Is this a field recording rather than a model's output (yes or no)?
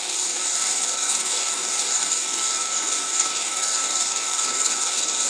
no